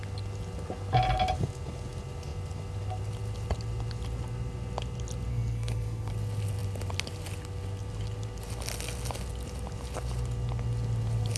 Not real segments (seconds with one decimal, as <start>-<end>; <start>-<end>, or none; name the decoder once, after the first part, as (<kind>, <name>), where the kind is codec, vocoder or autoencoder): 5.3-6.1 (codec, SNAC)